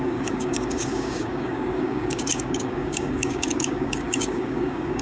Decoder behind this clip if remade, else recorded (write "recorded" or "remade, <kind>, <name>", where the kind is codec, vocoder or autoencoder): remade, codec, DAC